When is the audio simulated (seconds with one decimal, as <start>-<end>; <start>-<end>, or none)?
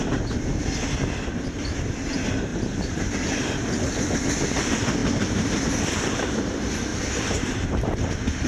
2.5-3.1; 6.9-8.1